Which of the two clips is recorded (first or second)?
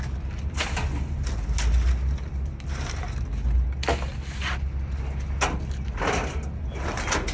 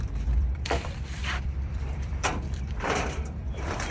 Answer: first